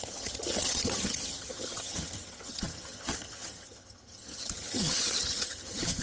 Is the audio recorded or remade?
remade